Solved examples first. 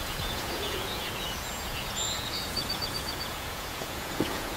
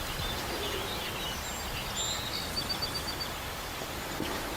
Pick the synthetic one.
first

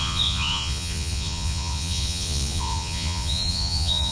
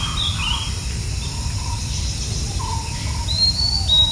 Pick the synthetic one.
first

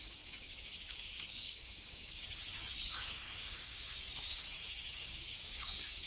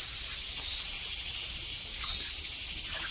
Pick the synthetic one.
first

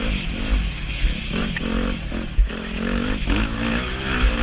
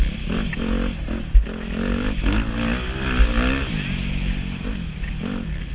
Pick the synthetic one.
first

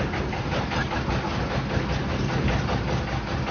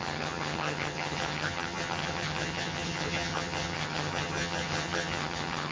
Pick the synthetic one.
second